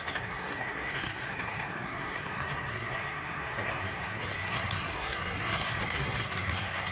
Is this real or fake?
fake